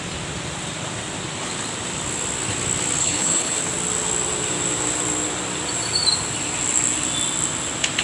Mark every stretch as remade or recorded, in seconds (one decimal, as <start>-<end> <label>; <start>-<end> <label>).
0.0-3.0 recorded; 3.0-3.6 remade; 3.6-8.0 recorded